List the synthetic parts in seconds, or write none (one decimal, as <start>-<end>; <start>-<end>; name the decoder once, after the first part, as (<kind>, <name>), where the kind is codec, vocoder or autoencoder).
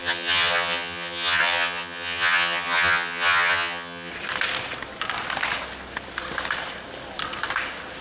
0.0-4.1 (vocoder, HiFi-GAN)